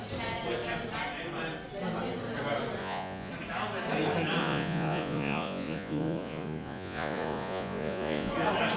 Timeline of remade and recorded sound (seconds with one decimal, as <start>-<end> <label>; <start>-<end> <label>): 0.0-2.8 recorded; 2.8-3.3 remade; 3.3-4.4 recorded; 4.4-8.3 remade; 8.3-8.8 recorded